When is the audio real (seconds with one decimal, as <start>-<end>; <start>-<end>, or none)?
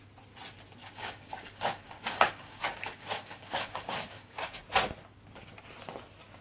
0.0-0.8; 4.6-6.4